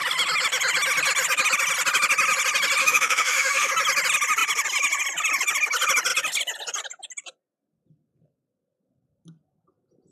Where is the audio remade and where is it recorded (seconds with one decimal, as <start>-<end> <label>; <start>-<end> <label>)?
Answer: 0.0-2.8 recorded; 2.8-3.7 remade; 3.7-10.1 recorded